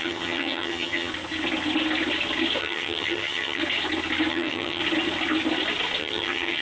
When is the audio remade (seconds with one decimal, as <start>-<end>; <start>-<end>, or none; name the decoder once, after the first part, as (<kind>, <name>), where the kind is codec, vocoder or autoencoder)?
0.0-1.1 (vocoder, HiFi-GAN); 2.6-3.6; 4.3-4.8; 6.0-6.6